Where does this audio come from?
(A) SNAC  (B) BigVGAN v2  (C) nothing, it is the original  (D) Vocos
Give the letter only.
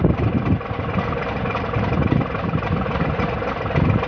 C